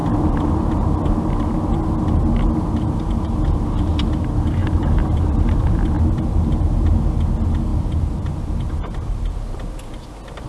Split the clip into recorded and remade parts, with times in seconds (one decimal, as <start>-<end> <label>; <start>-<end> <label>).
0.0-0.6 remade; 0.6-4.6 recorded; 4.6-5.9 remade; 5.9-7.7 recorded; 7.7-9.1 remade; 9.1-10.5 recorded